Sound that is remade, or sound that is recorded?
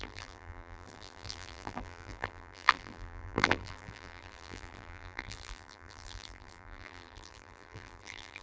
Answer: remade